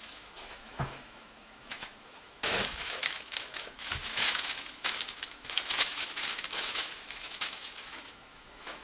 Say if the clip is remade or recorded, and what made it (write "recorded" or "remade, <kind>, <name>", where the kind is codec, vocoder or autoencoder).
remade, autoencoder, DAC-VAE